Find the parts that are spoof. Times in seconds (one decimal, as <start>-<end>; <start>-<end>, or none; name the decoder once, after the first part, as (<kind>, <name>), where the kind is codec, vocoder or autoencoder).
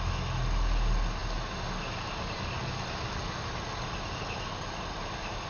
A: none